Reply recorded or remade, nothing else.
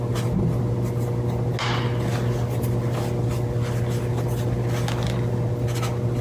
recorded